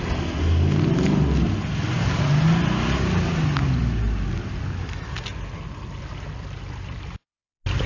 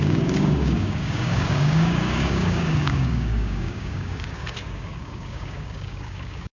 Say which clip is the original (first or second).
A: first